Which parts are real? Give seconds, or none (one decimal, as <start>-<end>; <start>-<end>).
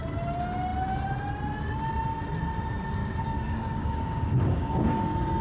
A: 0.0-3.0